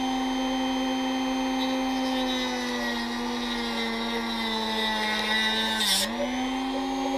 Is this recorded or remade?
recorded